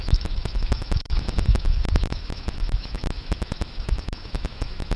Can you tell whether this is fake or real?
fake